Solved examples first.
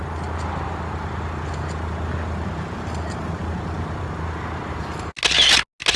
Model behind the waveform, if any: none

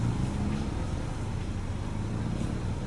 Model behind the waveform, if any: none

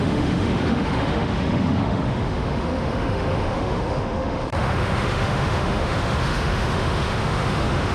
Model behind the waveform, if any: autoencoder, DAC-VAE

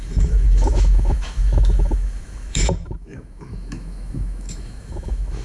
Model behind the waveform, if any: autoencoder, DAC-VAE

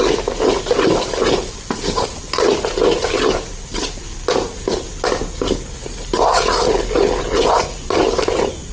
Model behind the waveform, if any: none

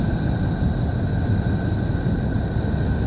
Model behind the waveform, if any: none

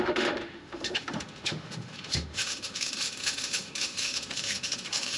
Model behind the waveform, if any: autoencoder, DAC-VAE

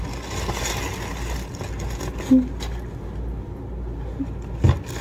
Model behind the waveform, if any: none